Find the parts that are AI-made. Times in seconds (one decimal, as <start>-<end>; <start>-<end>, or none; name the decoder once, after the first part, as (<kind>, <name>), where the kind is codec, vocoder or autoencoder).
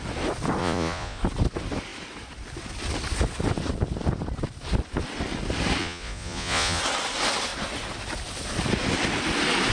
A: 0.6-1.2 (vocoder, Vocos); 5.8-6.8